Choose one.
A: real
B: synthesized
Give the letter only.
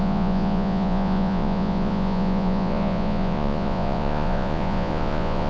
B